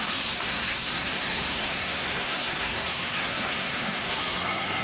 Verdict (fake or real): fake